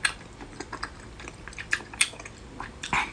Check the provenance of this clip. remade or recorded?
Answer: remade